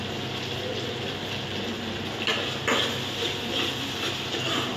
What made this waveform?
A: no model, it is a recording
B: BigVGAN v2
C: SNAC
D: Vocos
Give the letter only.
A